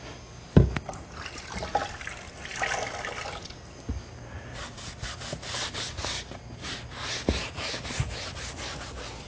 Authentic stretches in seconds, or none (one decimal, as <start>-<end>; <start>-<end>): 0.0-9.3